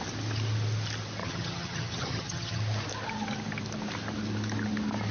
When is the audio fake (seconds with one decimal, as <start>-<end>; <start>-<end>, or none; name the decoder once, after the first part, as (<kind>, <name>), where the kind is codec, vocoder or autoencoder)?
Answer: 1.2-2.6 (vocoder, HiFi-GAN)